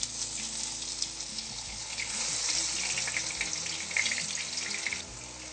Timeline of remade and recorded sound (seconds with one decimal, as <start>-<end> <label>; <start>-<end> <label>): 0.0-1.3 recorded; 1.3-2.2 remade; 2.2-5.5 recorded